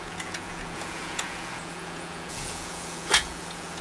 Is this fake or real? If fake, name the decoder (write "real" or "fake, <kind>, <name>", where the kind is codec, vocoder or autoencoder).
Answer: fake, vocoder, Vocos